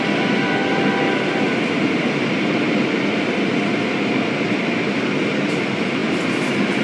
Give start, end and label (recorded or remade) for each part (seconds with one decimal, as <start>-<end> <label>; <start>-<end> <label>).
0.0-6.8 recorded